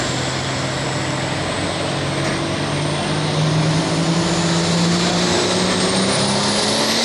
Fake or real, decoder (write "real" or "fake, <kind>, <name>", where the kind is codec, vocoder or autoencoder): real